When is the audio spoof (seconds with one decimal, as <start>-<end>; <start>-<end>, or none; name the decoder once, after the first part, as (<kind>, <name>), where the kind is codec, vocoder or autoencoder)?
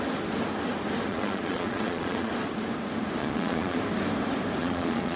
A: 1.1-2.3 (vocoder, Vocos); 3.2-3.8; 4.6-5.2